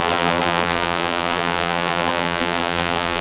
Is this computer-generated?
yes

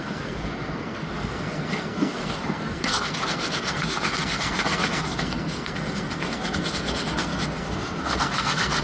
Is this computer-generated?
yes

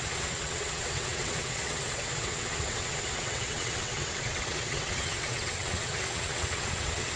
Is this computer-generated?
yes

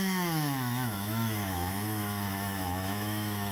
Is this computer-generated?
yes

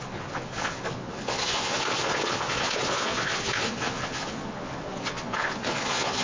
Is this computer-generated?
yes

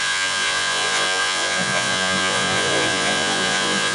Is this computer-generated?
yes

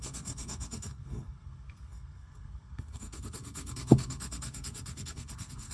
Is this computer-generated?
yes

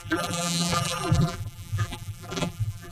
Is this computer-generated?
yes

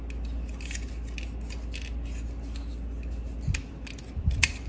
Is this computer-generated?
no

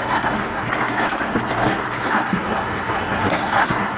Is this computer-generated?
yes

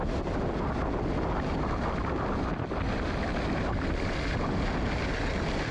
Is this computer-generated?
no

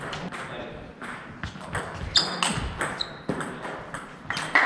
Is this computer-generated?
no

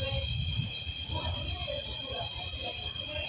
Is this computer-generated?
no